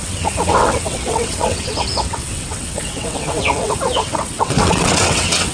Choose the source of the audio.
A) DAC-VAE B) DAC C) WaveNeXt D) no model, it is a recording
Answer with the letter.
C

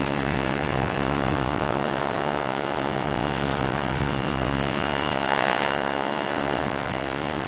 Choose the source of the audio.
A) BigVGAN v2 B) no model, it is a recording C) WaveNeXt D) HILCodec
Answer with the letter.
C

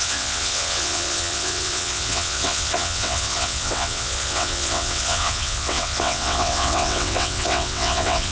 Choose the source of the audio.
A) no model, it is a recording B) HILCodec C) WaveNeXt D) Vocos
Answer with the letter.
C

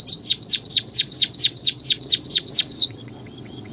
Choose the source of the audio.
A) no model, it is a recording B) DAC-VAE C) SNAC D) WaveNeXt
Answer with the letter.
D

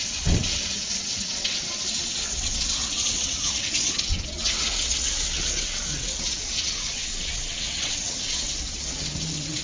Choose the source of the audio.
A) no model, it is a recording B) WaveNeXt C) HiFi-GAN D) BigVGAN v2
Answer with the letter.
B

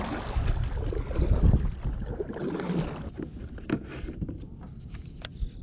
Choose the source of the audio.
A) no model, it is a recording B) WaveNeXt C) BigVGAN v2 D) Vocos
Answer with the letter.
A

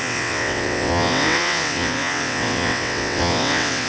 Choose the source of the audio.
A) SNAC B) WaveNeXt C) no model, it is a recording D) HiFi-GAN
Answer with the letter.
B